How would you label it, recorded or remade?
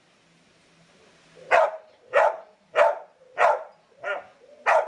recorded